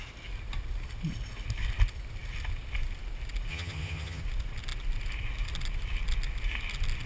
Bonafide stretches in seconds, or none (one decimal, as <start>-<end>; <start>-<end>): 0.0-3.5; 4.2-7.1